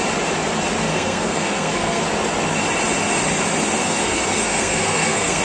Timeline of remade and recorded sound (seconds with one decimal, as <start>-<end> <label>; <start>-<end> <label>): 0.0-0.9 recorded; 0.9-2.0 remade; 2.0-3.8 recorded; 3.8-5.4 remade